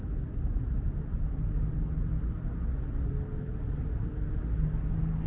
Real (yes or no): yes